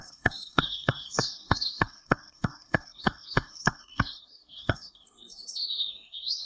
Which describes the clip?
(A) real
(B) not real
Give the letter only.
B